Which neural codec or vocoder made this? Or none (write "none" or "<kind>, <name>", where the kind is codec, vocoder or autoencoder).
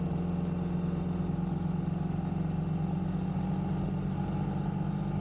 none